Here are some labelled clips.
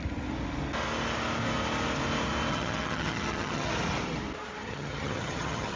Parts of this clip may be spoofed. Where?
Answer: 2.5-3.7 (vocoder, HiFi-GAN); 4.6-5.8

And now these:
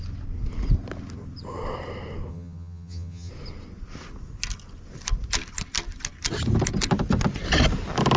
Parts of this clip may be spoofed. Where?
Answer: 2.3-3.3 (vocoder, HiFi-GAN)